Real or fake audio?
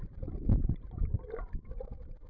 real